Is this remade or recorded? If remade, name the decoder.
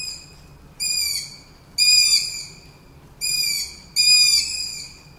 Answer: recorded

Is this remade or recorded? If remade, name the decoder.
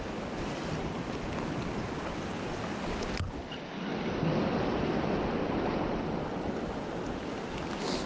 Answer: recorded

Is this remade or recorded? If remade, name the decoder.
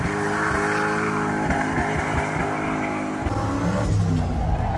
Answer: recorded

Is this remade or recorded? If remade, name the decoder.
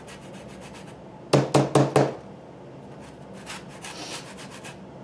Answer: recorded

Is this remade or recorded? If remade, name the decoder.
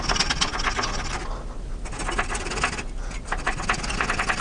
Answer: recorded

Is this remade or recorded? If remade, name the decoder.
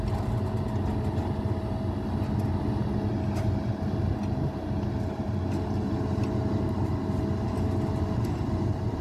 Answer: recorded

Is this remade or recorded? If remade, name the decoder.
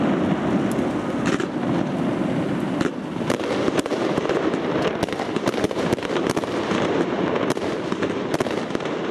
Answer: recorded